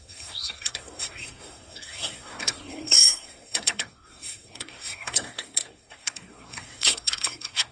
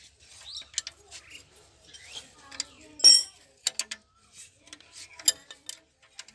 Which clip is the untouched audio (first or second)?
second